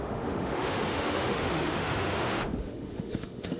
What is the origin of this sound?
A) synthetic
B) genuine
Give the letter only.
A